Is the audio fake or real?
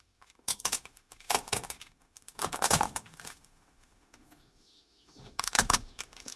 fake